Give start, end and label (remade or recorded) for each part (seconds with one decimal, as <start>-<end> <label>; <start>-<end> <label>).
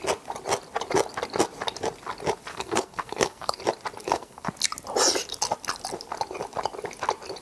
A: 0.0-2.5 recorded; 2.5-3.6 remade; 3.6-4.0 recorded; 4.0-4.5 remade; 4.5-7.4 recorded